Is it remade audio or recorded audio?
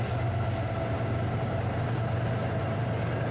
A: recorded